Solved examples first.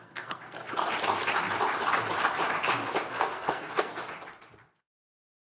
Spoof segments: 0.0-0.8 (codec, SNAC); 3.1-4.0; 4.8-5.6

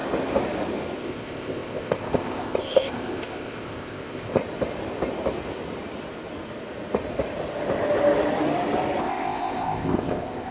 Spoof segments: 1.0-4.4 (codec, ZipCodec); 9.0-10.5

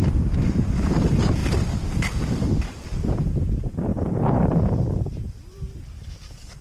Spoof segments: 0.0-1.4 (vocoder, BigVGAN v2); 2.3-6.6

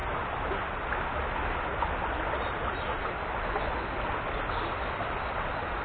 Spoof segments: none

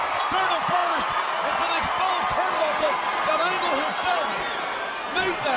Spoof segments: none

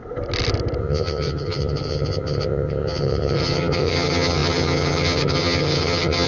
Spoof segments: 0.8-6.3 (vocoder, HiFi-GAN)

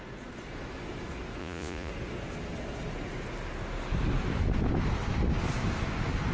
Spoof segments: 1.4-1.9 (vocoder, Vocos)